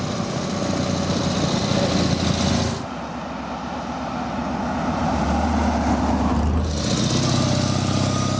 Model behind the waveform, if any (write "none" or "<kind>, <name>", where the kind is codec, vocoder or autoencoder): none